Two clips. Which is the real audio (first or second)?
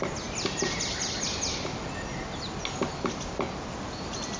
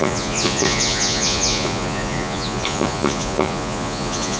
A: first